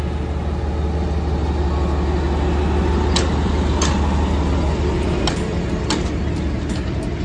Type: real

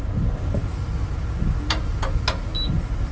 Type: real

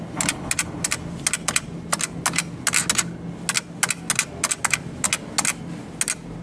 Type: real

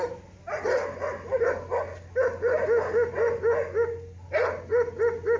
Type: real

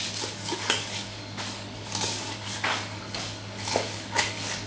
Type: fake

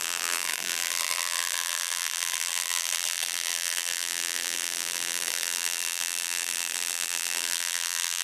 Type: fake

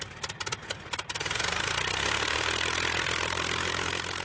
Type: real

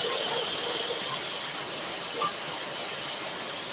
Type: real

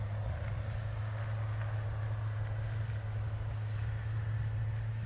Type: real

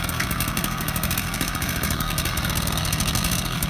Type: fake